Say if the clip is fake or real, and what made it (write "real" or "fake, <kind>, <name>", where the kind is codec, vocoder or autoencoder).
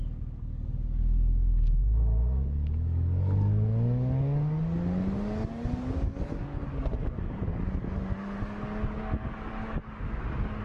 fake, codec, DAC